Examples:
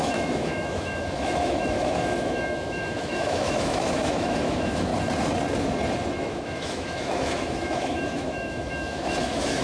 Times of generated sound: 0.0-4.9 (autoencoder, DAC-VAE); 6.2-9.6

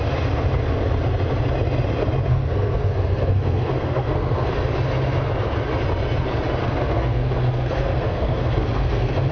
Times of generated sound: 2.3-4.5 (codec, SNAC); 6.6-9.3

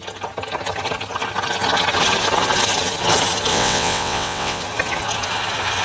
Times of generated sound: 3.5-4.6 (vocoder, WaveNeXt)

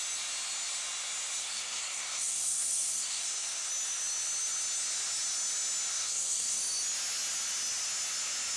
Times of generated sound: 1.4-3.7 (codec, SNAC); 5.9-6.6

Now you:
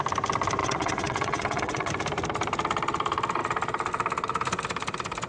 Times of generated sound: 0.6-1.9 (vocoder, WaveNeXt)

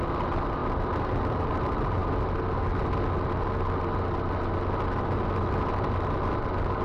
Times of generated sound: none

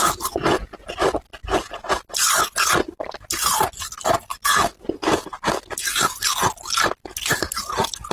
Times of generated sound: none

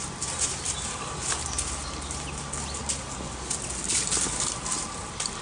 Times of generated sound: none